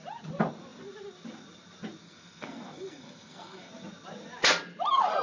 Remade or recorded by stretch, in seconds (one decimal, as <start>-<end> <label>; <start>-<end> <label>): 0.0-2.0 recorded; 2.0-3.7 remade; 3.7-5.2 recorded